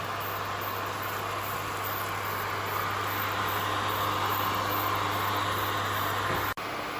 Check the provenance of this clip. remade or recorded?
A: recorded